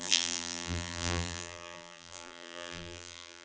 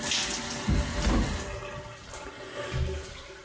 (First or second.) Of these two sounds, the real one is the second